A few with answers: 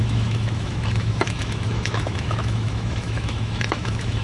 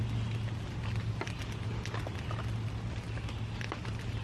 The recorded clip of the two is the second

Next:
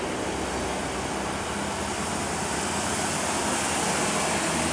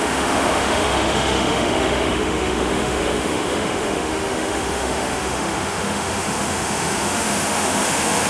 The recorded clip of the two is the first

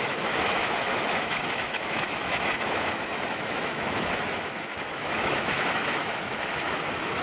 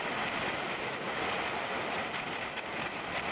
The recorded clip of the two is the second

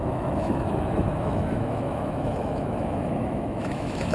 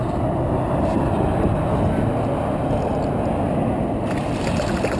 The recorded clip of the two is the second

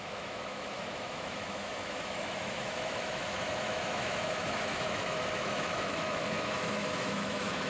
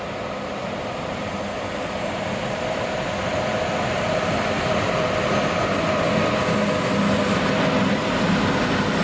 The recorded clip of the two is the second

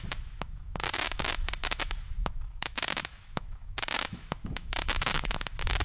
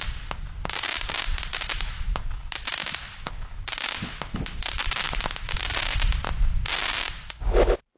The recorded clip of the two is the second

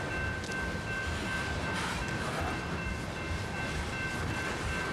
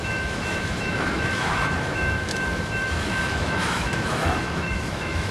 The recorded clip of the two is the first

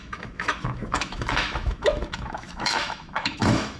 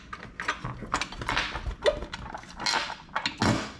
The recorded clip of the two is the second